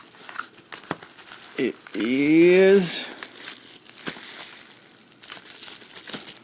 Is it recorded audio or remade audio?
recorded